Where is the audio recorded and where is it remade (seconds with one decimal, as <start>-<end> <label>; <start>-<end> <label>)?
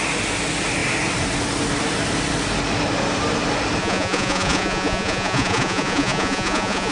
0.0-3.8 recorded; 3.8-6.9 remade